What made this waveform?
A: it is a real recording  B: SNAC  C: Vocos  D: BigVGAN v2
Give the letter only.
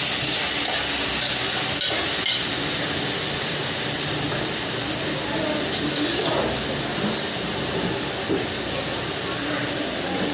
A